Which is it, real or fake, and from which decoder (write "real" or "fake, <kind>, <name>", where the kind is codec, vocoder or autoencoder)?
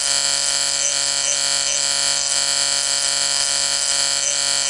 fake, codec, SNAC